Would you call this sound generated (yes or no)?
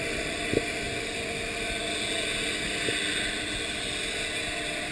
no